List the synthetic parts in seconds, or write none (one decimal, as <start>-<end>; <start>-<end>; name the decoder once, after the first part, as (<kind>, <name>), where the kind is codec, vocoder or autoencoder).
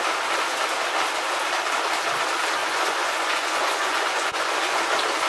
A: 2.6-4.8 (vocoder, Vocos)